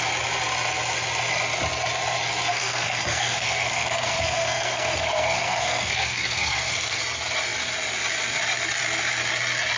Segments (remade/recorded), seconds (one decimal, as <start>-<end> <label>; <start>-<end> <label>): 0.0-2.5 recorded; 2.5-7.0 remade; 7.0-9.8 recorded